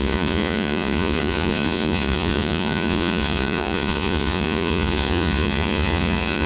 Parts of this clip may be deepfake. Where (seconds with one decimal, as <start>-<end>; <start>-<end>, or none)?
0.0-6.5